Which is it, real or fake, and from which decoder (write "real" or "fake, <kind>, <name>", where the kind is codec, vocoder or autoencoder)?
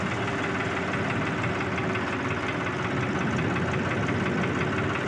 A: real